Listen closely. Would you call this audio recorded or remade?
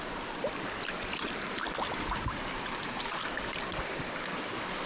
recorded